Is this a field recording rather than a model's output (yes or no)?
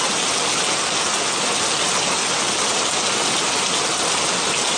yes